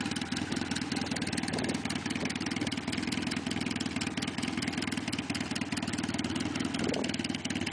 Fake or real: real